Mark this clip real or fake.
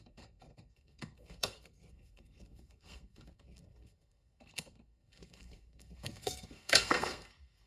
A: fake